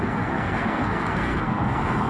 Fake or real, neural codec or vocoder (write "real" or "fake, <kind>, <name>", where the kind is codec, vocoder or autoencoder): fake, codec, SNAC